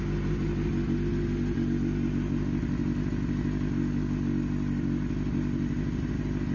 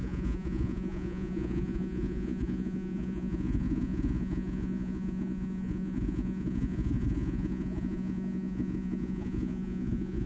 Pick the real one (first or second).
first